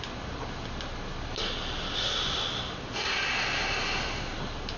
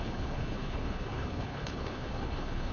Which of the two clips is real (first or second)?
first